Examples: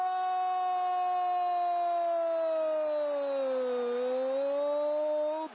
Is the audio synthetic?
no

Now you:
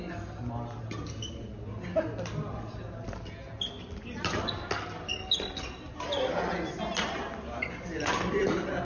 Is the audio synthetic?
no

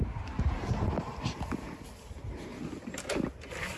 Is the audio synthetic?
no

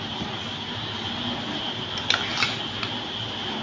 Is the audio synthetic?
no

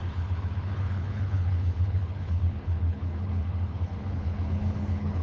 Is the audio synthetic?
yes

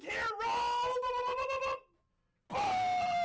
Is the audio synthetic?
no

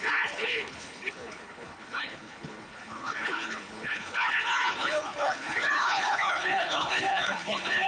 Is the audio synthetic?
yes